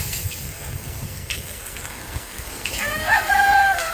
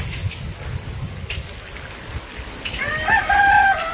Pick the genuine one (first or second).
second